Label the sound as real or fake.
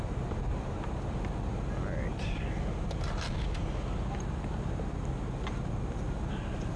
real